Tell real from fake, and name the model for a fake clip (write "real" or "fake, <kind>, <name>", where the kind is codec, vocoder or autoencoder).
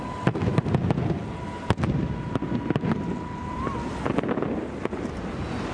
real